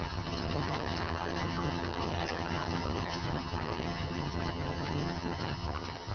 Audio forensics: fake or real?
fake